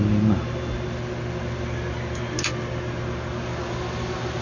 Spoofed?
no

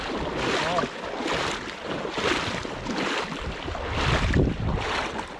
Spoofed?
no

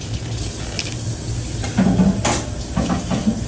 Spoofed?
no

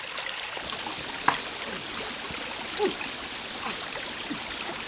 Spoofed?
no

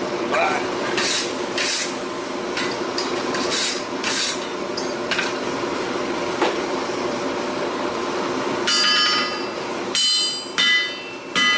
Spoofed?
no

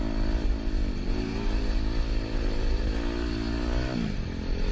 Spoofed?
no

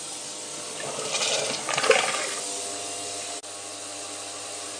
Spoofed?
no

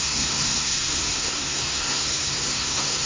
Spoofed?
yes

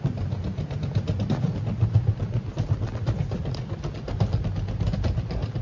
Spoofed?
no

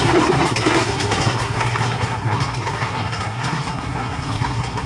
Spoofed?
yes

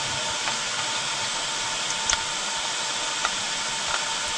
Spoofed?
no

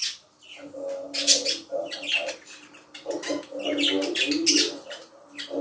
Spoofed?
no